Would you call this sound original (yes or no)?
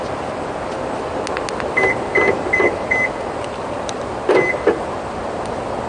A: yes